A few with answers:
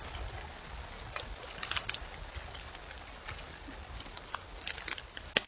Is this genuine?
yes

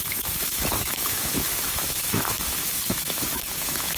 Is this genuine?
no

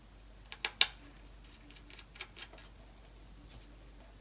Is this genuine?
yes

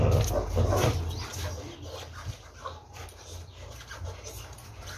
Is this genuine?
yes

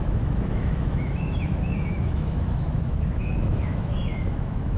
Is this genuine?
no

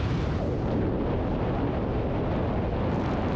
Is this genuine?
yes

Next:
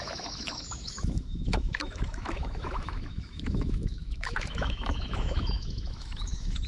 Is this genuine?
no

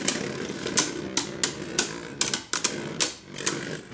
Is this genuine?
yes